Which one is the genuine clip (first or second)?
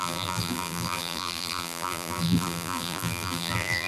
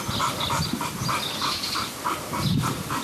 second